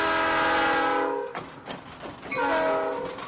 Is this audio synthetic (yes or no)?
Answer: no